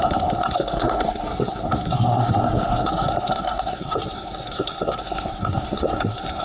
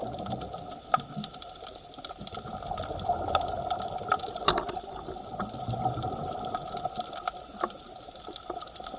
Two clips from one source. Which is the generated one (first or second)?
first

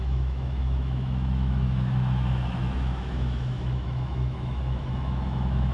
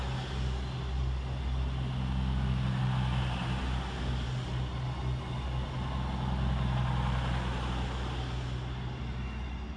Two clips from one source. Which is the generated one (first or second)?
first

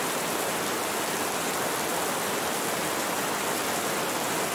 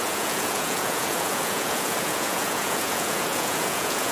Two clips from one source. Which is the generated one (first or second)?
second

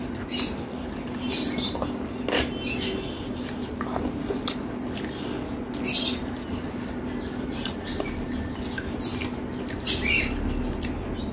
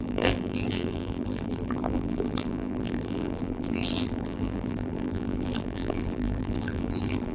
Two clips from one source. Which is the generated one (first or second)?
second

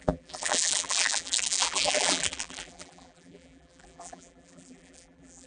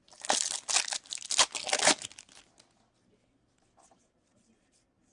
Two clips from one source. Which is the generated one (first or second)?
first